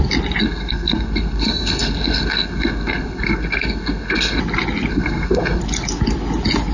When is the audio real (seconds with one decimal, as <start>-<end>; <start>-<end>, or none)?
0.0-0.4; 4.4-4.9; 5.6-6.7